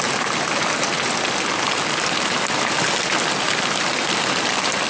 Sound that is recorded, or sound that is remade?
recorded